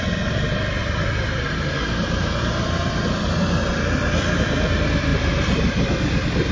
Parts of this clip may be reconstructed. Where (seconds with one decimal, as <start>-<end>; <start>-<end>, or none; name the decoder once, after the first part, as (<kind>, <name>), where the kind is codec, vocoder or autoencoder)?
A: none